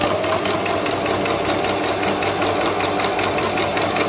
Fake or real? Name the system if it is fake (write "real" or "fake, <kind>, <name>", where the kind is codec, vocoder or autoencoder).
real